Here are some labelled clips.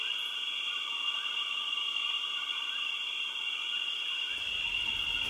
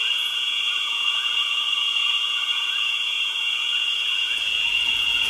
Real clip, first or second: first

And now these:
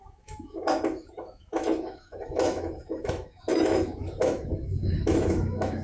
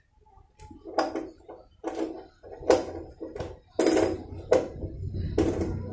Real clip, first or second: second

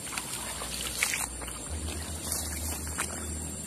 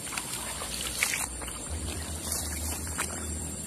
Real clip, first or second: first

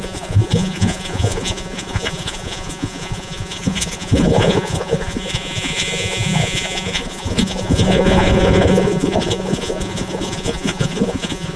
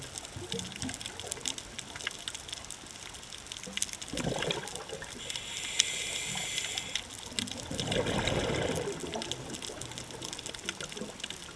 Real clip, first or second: second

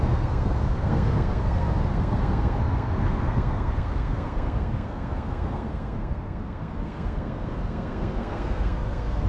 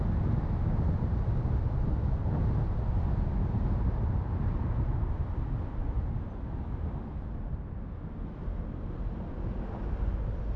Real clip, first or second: second